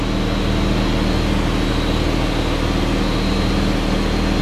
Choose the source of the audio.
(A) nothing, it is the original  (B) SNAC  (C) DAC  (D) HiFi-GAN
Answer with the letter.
A